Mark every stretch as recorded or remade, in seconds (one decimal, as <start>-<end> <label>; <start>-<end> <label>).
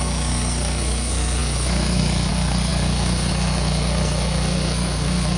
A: 0.0-5.4 remade